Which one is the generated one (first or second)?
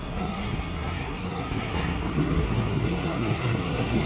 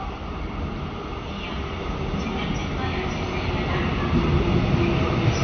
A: first